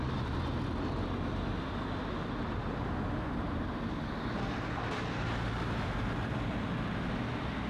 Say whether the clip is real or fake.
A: real